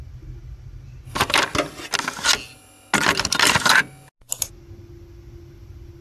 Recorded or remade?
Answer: recorded